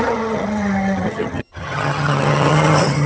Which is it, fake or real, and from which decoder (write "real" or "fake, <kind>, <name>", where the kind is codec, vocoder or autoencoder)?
fake, vocoder, HiFi-GAN